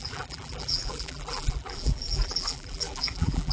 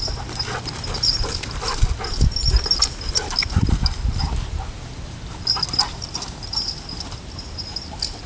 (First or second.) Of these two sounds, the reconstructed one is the first